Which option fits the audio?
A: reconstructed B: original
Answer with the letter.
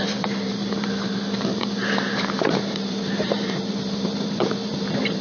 A